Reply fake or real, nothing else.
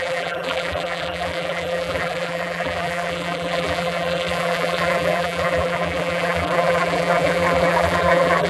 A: fake